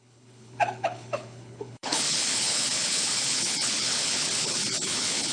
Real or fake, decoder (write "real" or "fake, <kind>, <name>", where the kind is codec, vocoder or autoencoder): fake, codec, HILCodec